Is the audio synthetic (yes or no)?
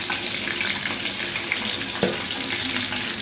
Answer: no